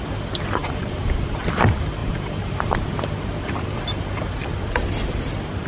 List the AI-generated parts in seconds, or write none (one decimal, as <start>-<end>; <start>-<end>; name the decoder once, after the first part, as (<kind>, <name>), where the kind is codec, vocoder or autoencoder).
0.6-1.4 (vocoder, BigVGAN v2); 2.0-3.2